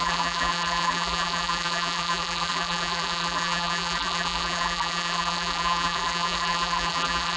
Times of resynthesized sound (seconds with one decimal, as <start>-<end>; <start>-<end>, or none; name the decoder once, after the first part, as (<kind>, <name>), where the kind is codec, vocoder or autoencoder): 0.0-7.4 (vocoder, BigVGAN v2)